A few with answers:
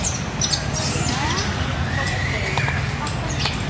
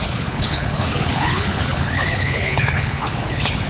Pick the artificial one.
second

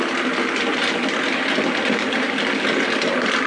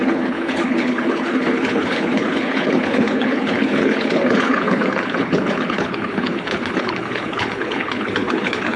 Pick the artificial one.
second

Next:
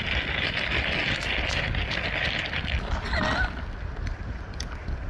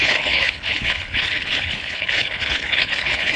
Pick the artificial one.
second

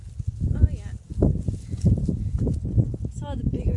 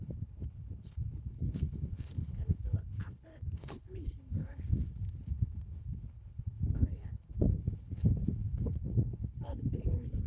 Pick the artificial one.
second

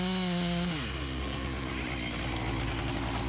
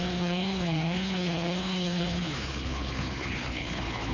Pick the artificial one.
second